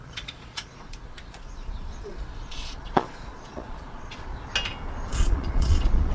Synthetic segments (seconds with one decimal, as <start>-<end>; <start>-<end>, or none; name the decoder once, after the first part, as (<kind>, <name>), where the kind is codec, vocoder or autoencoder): 0.0-4.3 (vocoder, Vocos); 5.1-6.1